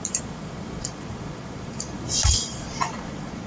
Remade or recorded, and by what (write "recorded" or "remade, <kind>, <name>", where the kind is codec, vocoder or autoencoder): remade, vocoder, Vocos